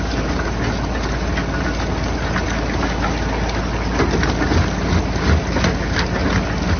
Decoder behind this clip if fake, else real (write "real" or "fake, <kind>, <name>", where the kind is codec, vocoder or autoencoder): real